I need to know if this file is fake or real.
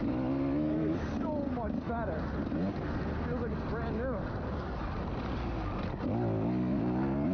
real